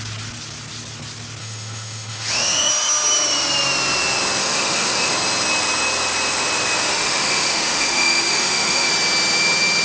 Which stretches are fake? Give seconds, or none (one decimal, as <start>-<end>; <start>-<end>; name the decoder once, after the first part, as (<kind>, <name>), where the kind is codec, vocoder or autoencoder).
1.4-2.7 (autoencoder, DAC-VAE); 4.4-5.1; 6.9-8.9